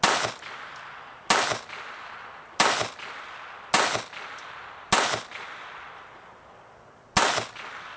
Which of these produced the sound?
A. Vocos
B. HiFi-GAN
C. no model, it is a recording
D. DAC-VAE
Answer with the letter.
C